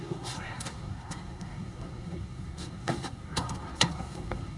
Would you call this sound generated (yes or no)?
yes